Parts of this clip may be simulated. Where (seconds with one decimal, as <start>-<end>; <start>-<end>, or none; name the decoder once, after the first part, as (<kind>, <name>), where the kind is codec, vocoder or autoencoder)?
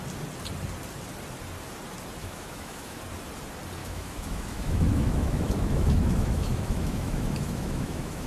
2.2-3.0 (autoencoder, DAC-VAE); 3.8-8.3